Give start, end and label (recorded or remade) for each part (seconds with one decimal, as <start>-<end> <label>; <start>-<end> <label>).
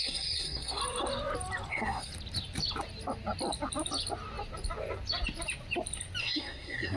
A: 0.0-0.8 remade; 0.8-1.7 recorded; 1.7-2.1 remade; 2.1-6.2 recorded; 6.2-7.0 remade